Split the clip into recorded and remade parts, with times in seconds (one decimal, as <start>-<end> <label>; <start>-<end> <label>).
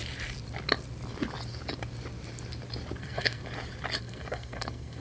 0.0-3.0 recorded; 3.0-3.4 remade; 3.4-4.0 recorded; 4.0-5.0 remade